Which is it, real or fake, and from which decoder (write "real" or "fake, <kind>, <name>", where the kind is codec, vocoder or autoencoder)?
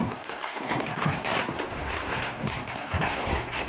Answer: fake, codec, SNAC